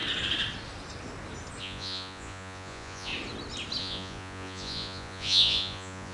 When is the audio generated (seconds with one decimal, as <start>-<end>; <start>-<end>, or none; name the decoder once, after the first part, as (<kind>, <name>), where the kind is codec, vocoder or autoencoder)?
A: 1.6-3.1 (vocoder, Vocos); 3.8-6.1